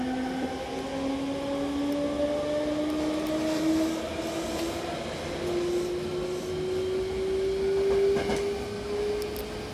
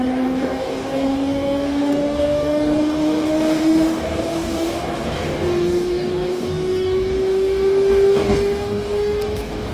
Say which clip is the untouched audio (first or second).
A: first